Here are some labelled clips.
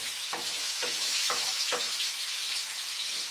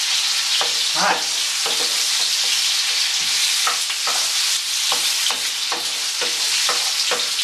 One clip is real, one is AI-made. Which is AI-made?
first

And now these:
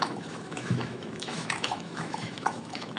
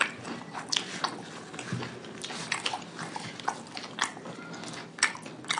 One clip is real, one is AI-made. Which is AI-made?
first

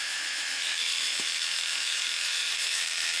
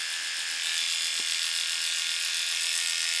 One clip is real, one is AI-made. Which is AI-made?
first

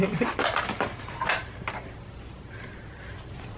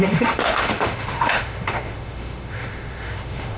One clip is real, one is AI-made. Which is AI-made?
second